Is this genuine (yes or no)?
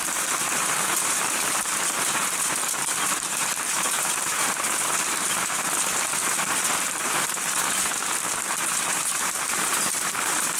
no